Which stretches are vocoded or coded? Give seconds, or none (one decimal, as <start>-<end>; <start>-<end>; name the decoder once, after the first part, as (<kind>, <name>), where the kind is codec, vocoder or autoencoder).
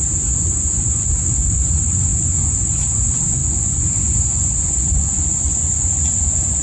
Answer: 0.0-6.6 (vocoder, Vocos)